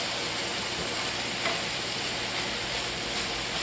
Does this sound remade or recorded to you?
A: remade